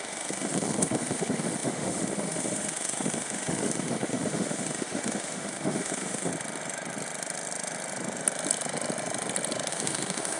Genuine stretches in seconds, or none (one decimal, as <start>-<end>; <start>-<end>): 6.3-9.7